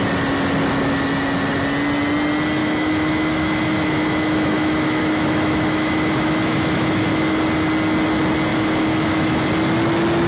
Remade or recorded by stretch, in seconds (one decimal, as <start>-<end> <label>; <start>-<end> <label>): 0.0-2.6 recorded; 2.6-7.4 remade; 7.4-8.5 recorded; 8.5-9.5 remade; 9.5-10.3 recorded